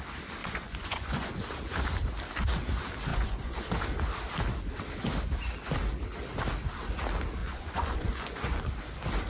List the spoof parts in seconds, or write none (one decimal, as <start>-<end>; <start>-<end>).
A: 0.4-1.3; 3.1-3.7; 7.4-8.6